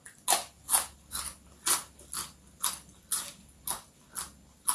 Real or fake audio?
real